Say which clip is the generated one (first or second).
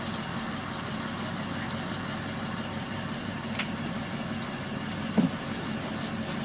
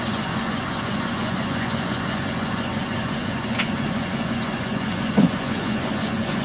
second